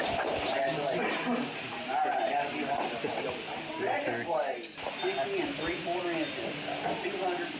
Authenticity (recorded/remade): recorded